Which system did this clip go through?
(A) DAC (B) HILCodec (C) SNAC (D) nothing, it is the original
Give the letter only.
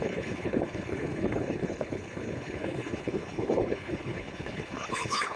B